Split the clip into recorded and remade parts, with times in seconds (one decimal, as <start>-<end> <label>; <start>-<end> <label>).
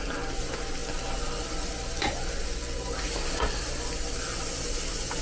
0.0-5.2 recorded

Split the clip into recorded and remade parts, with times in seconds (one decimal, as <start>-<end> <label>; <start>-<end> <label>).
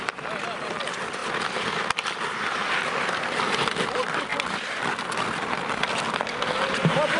0.0-7.2 recorded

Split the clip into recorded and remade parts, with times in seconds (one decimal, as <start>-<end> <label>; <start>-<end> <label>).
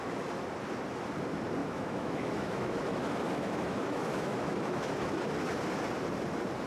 0.0-1.6 recorded; 1.6-5.2 remade; 5.2-6.7 recorded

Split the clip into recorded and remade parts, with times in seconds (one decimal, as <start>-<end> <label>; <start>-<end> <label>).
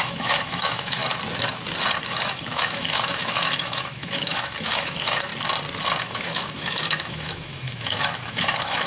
0.0-1.0 remade; 1.0-2.0 recorded; 2.0-5.3 remade; 5.3-6.0 recorded; 6.0-8.9 remade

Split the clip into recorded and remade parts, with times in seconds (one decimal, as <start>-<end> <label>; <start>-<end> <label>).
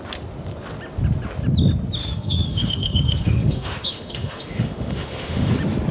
0.0-2.0 recorded; 2.0-5.5 remade; 5.5-5.9 recorded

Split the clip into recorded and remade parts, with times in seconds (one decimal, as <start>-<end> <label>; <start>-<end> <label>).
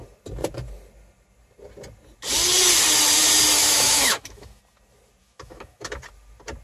0.0-3.6 recorded; 3.6-4.6 remade; 4.6-5.2 recorded; 5.2-6.0 remade; 6.0-6.6 recorded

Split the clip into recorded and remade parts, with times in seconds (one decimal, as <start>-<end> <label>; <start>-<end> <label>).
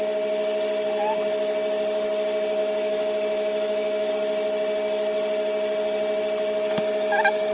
0.0-2.6 recorded; 2.6-4.1 remade; 4.1-7.5 recorded